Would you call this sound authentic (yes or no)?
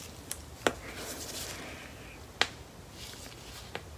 yes